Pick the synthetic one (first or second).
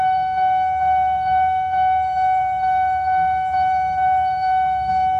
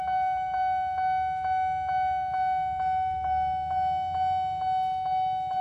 first